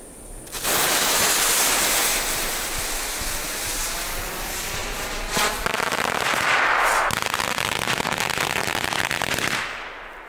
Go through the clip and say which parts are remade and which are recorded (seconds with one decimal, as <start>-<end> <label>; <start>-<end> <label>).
0.0-10.3 recorded